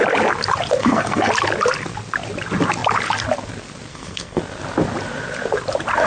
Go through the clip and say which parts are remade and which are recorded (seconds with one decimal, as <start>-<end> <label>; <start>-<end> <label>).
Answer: 0.0-0.8 recorded; 0.8-1.3 remade; 1.3-3.9 recorded; 3.9-4.4 remade; 4.4-6.1 recorded